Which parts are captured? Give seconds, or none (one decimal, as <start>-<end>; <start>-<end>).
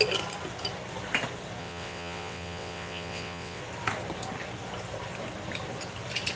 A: 0.0-1.6; 3.6-6.4